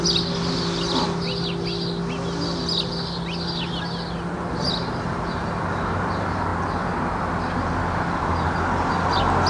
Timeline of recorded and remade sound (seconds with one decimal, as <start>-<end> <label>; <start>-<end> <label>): 0.0-9.5 recorded